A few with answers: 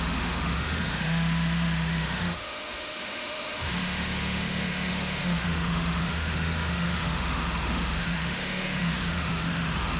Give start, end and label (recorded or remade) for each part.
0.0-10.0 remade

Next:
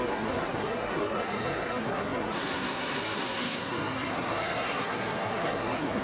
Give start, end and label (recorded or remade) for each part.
0.0-6.0 remade

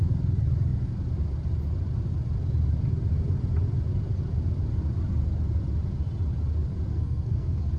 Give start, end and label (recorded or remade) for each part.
0.0-6.9 recorded; 6.9-7.8 remade

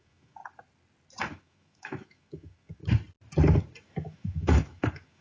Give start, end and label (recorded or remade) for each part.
0.0-0.4 remade; 0.4-1.3 recorded; 1.3-2.8 remade; 2.8-3.8 recorded; 3.8-5.2 remade

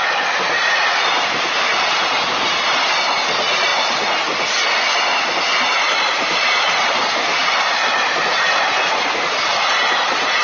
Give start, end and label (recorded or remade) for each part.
0.0-10.4 recorded

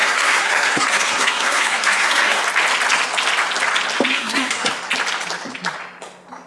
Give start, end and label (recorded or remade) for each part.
0.0-2.4 remade; 2.4-4.1 recorded; 4.1-4.7 remade; 4.7-6.5 recorded

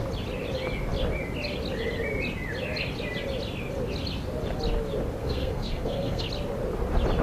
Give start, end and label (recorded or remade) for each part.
0.0-5.2 recorded; 5.2-6.3 remade; 6.3-7.2 recorded